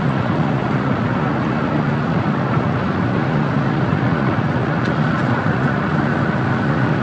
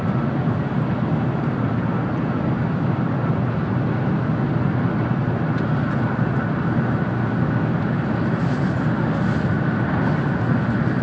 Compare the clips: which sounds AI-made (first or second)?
first